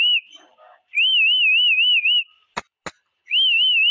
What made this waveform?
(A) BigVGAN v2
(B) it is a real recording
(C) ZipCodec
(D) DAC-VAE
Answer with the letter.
B